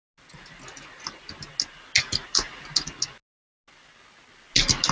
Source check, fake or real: real